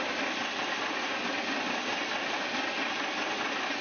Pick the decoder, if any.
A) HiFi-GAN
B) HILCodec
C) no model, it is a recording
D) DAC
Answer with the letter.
C